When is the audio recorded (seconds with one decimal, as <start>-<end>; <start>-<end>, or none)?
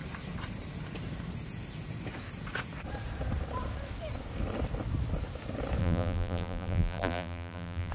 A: 0.0-5.8